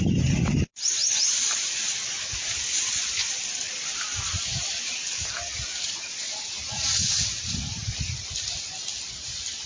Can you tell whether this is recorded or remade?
recorded